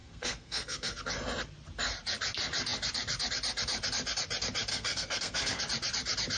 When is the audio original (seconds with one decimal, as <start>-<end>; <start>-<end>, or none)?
1.0-4.7; 5.6-6.4